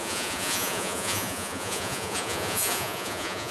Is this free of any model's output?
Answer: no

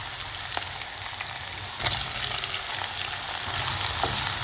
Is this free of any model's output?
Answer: yes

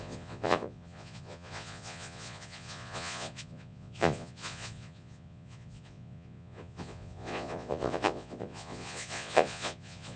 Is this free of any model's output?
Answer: no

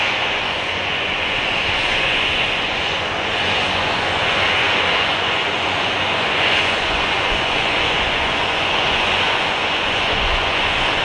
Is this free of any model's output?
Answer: no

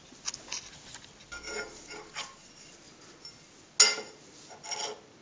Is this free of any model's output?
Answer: yes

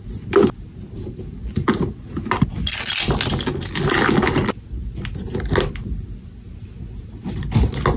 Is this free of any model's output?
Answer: yes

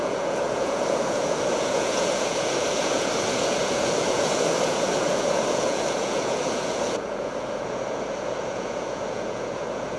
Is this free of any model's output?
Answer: no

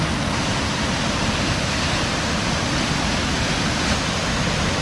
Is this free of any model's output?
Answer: yes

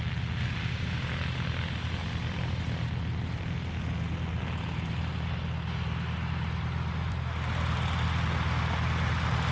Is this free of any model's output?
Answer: yes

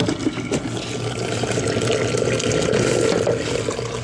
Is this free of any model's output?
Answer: yes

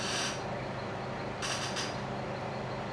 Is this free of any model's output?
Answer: yes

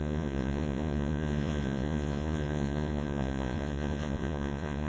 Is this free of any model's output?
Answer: no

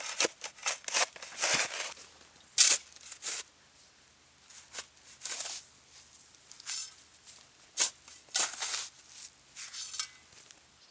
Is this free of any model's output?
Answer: yes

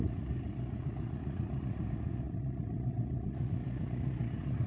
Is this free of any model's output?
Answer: no